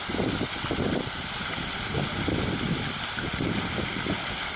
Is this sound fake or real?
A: real